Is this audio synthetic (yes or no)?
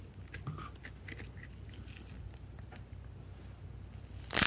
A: no